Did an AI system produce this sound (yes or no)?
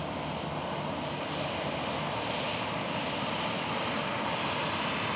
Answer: no